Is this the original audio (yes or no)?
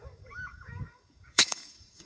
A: no